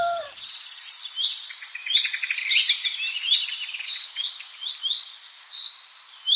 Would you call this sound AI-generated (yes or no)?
yes